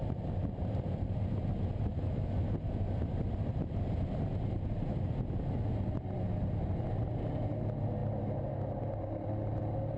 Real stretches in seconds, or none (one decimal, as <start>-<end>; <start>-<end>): 0.0-1.9; 2.5-10.0